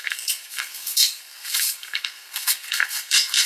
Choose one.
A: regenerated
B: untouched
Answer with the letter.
A